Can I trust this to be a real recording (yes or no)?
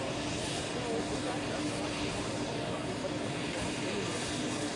yes